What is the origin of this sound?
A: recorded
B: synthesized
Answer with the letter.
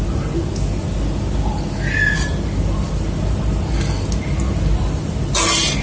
A